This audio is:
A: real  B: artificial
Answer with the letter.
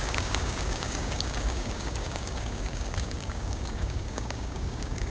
B